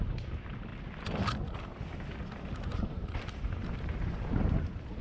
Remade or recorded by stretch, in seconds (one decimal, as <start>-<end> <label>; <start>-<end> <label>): 0.0-2.7 recorded; 2.7-5.0 remade